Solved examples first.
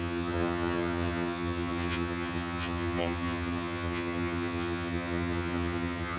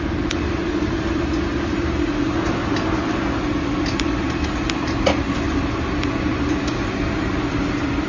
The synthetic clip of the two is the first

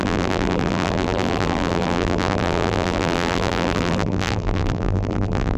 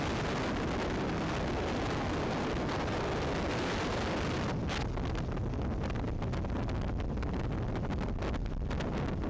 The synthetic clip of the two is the first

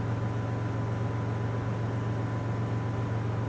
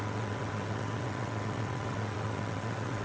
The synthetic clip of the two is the second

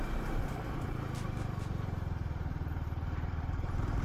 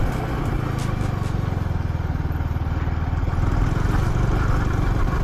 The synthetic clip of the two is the first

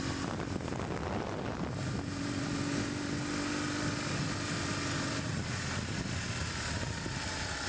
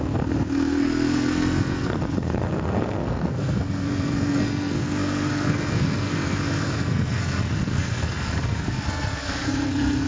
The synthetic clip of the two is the second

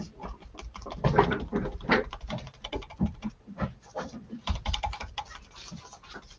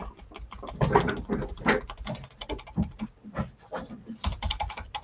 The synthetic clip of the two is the first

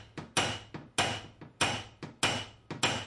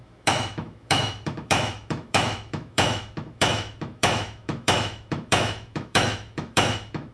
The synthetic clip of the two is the second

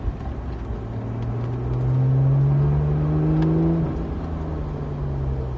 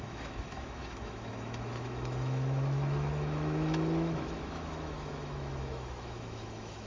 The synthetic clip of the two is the second